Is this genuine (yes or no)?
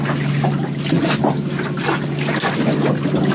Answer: yes